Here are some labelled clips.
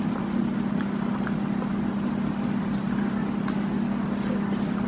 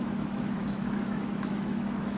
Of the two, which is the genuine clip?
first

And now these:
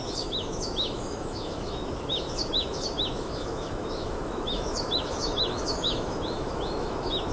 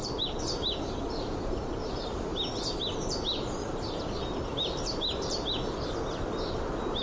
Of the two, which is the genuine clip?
second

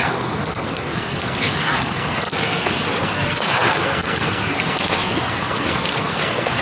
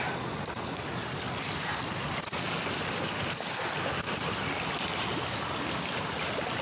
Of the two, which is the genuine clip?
second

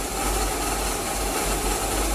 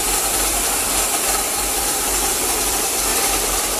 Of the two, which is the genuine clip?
first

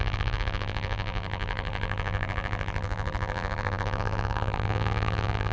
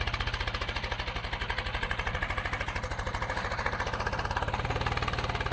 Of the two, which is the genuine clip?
second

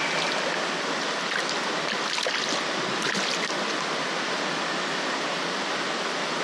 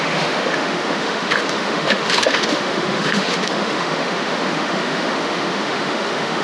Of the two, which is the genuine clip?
first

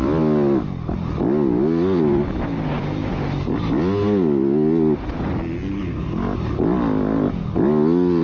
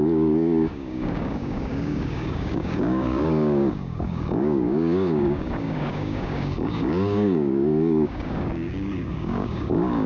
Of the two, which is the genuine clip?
first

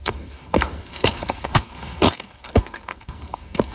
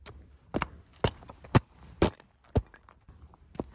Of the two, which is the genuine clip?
second